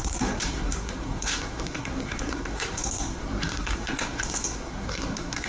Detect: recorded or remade remade